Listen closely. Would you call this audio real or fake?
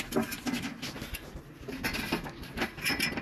real